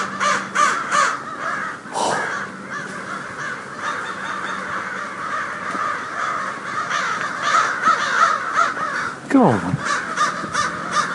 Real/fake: real